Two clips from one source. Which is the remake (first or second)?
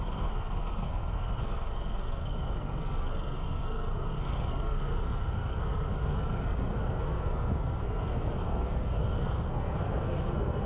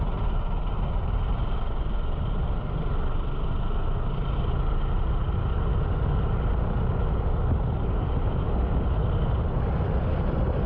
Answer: first